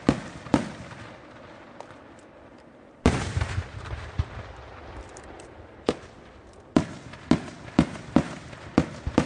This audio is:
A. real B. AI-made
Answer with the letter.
A